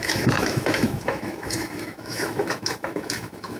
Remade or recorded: remade